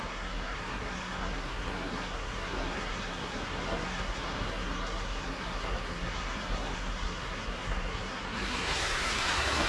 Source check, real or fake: fake